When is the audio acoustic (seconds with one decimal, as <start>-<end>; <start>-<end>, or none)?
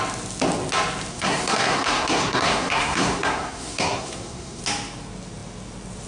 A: 0.0-1.1; 4.6-6.1